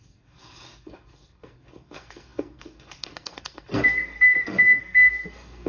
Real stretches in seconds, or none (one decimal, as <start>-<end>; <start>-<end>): none